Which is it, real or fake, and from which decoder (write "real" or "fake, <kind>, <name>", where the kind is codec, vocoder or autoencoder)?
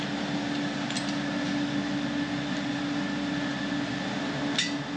real